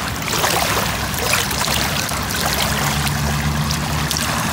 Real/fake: real